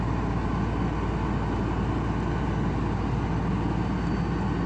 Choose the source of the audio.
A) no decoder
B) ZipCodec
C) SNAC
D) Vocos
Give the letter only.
A